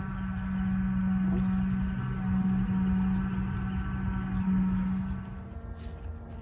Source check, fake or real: real